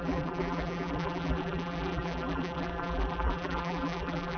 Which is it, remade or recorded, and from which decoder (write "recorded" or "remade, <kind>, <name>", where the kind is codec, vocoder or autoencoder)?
remade, vocoder, BigVGAN v2